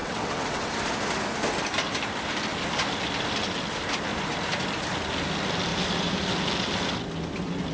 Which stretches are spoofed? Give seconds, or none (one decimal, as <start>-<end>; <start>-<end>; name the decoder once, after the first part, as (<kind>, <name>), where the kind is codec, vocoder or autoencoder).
0.0-0.7 (vocoder, WaveNeXt)